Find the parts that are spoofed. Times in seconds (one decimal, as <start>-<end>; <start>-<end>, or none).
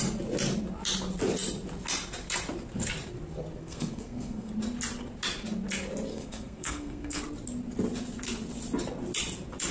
3.6-4.5; 6.1-7.2